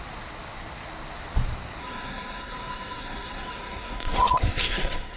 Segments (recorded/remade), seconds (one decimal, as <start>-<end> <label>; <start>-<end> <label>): 0.0-1.8 recorded; 1.8-5.2 remade